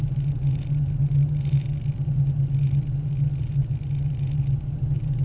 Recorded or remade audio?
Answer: recorded